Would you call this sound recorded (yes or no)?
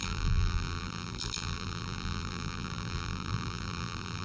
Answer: no